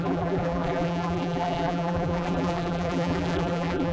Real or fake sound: fake